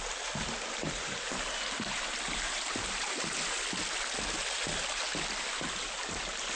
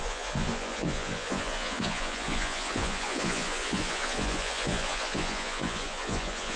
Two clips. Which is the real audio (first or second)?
first